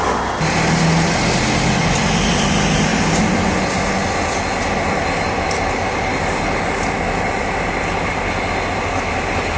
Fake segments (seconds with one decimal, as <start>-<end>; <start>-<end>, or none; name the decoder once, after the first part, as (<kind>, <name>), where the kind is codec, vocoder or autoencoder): none